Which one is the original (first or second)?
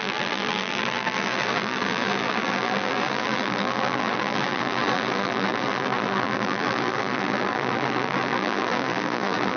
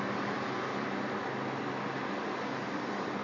second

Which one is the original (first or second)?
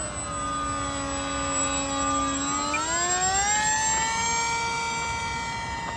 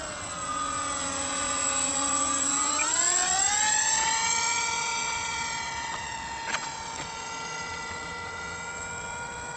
first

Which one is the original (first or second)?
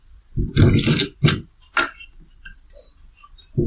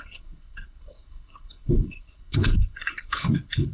first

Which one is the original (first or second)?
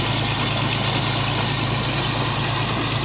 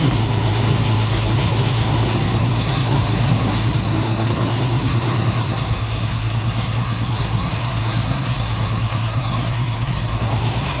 first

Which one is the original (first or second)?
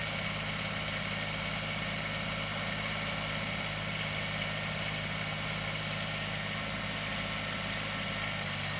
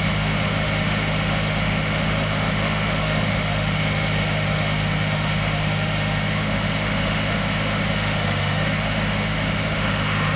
first